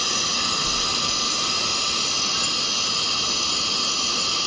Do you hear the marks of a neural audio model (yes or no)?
no